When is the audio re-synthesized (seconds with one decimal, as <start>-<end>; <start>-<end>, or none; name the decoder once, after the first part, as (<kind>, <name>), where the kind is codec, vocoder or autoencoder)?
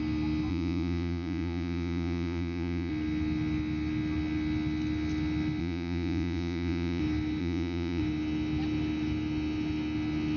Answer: 0.5-2.9 (vocoder, Vocos); 5.6-7.0; 7.4-8.0